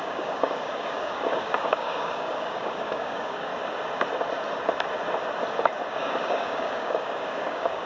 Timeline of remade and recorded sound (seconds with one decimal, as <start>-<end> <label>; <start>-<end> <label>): 0.0-3.5 remade; 3.5-5.9 recorded; 5.9-7.9 remade